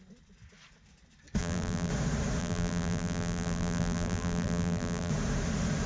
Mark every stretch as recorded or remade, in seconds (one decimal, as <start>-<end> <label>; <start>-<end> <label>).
0.0-1.4 recorded; 1.4-1.9 remade; 1.9-2.4 recorded; 2.4-5.1 remade; 5.1-5.9 recorded